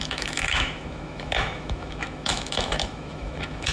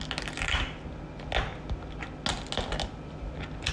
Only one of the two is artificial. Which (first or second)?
first